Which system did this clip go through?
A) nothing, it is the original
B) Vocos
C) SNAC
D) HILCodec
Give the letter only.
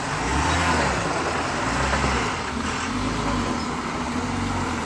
A